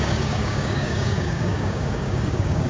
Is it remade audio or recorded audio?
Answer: remade